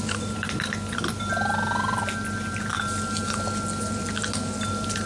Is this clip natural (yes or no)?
yes